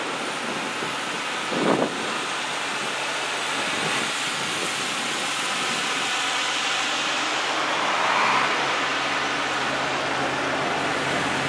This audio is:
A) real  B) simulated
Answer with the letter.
A